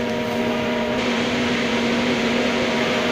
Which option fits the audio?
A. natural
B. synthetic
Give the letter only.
B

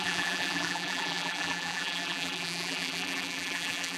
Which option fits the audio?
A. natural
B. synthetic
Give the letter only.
B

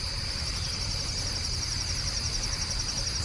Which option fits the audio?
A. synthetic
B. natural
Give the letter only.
B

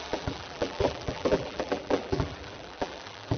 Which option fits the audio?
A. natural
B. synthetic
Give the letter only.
B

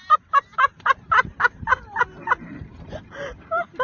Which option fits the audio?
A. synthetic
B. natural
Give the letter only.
A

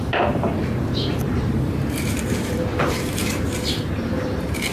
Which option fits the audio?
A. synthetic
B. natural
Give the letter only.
A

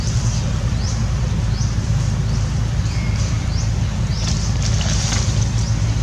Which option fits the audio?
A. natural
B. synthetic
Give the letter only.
B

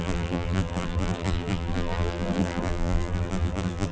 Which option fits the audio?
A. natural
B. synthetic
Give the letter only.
B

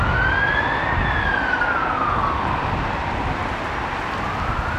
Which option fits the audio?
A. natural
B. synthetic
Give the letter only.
A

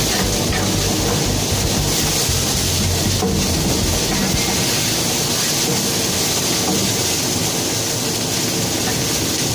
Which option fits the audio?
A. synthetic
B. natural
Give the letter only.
B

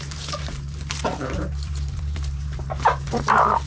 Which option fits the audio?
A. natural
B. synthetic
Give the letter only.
B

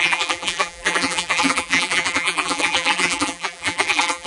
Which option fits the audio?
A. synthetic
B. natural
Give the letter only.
A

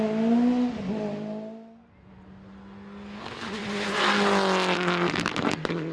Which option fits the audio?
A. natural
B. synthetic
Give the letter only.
A